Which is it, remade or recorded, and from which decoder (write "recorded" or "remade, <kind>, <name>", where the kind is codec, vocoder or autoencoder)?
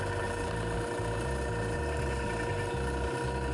recorded